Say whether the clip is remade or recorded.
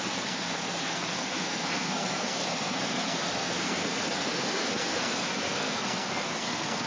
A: remade